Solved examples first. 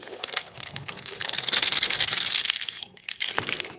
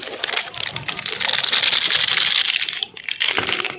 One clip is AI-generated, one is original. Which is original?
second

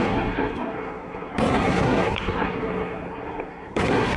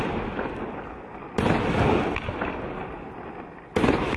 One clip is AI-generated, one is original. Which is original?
second